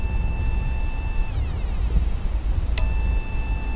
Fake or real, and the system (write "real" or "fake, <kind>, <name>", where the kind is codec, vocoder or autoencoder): real